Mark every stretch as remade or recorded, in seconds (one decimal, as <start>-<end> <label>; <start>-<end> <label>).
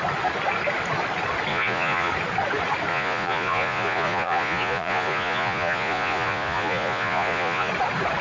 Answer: 0.0-1.5 recorded; 1.5-2.1 remade; 2.1-2.9 recorded; 2.9-7.7 remade; 7.7-8.2 recorded